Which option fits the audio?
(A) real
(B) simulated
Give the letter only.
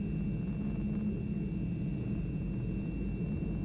A